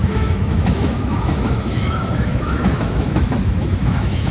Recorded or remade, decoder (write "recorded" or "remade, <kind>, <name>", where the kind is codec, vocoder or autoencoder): remade, autoencoder, DAC-VAE